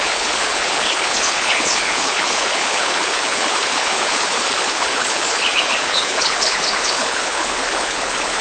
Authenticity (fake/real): fake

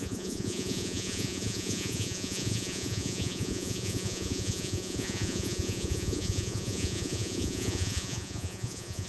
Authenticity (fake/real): fake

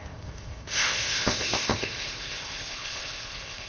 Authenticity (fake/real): fake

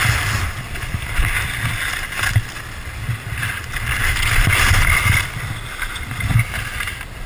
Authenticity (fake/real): real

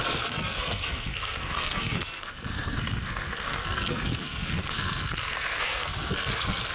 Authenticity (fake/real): fake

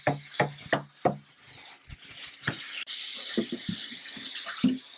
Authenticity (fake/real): real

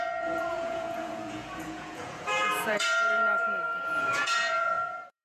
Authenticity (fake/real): fake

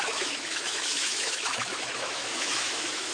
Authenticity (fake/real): fake